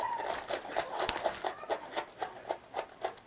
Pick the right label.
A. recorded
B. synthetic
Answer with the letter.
A